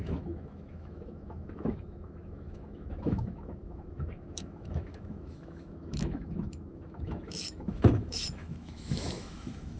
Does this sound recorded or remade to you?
remade